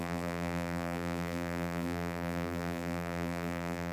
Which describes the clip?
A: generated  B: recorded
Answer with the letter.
A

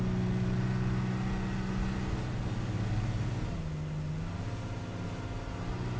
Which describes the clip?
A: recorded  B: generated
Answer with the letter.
A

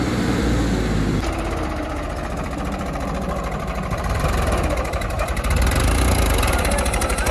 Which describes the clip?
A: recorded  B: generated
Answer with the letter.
B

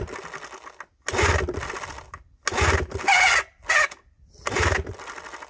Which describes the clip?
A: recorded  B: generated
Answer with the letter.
A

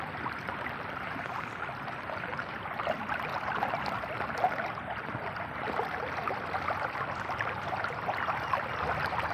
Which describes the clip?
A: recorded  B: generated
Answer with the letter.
A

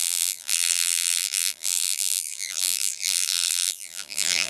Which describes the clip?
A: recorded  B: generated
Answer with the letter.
B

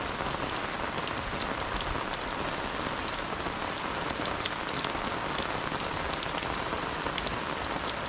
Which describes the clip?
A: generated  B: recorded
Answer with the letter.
B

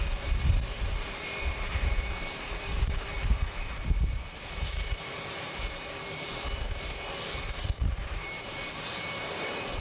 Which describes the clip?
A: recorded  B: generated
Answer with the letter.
B